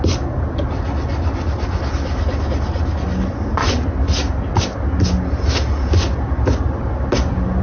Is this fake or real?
real